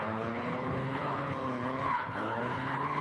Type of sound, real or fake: fake